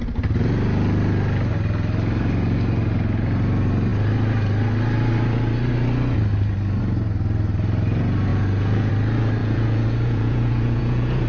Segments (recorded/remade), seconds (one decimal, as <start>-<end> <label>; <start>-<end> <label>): 0.0-8.3 recorded; 8.3-8.9 remade; 8.9-9.4 recorded; 9.4-11.3 remade